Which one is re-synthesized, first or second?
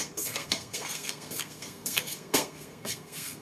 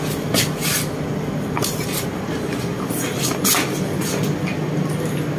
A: first